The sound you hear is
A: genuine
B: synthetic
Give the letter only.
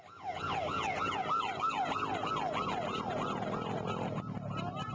A